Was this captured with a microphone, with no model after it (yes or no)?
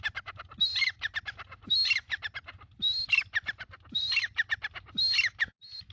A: no